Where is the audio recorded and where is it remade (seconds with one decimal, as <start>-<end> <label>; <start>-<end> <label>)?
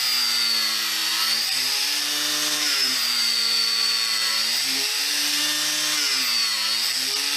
0.0-1.0 recorded; 1.0-5.4 remade; 5.4-7.4 recorded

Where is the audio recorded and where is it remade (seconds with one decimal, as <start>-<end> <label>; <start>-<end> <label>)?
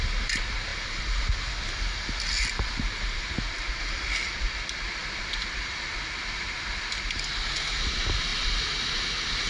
0.0-9.5 recorded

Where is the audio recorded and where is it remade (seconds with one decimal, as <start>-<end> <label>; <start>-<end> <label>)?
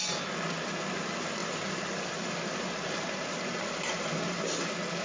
0.0-1.4 recorded; 1.4-4.4 remade; 4.4-5.0 recorded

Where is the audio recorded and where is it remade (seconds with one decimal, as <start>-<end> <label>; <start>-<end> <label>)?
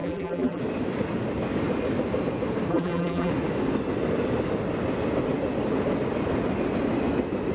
0.0-0.6 remade; 0.6-2.7 recorded; 2.7-3.3 remade; 3.3-7.5 recorded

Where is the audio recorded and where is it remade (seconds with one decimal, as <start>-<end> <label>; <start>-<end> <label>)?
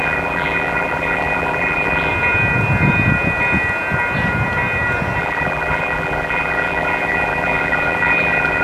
0.0-2.1 remade; 2.1-5.2 recorded; 5.2-8.6 remade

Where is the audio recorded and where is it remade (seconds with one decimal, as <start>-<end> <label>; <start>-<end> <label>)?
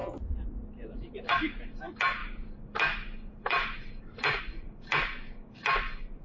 0.0-1.8 remade; 1.8-2.2 recorded; 2.2-4.4 remade; 4.4-6.2 recorded